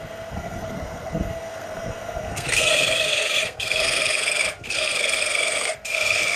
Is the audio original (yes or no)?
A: no